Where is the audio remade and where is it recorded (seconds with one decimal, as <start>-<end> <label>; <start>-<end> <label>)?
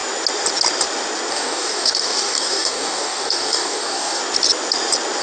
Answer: 0.0-1.3 recorded; 1.3-4.2 remade; 4.2-5.2 recorded